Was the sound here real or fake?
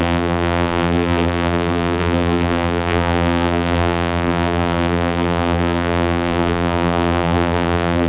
fake